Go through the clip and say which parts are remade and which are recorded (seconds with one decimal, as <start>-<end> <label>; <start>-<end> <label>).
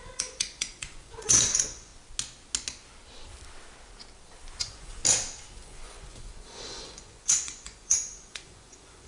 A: 0.0-1.9 remade; 1.9-4.6 recorded; 4.6-5.0 remade; 5.0-5.5 recorded; 5.5-9.1 remade